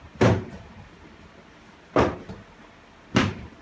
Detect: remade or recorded recorded